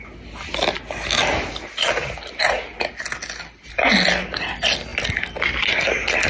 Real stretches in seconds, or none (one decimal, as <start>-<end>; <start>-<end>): 0.0-6.3